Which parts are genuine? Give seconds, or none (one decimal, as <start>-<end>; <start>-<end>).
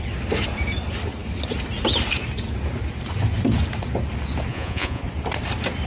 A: 0.0-4.5; 5.0-5.9